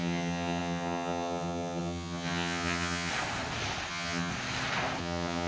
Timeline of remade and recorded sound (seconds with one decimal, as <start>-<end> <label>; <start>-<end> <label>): 0.0-3.1 remade; 3.1-3.9 recorded; 3.9-4.3 remade; 4.3-5.0 recorded; 5.0-5.5 remade